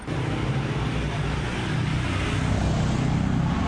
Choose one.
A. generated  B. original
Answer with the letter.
B